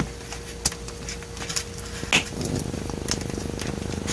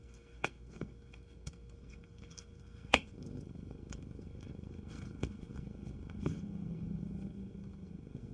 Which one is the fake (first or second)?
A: second